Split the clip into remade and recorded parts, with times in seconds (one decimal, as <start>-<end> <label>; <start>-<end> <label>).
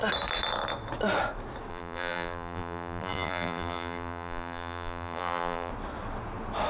0.0-1.7 recorded; 1.7-5.7 remade; 5.7-6.7 recorded